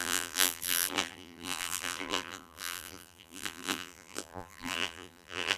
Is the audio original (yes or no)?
no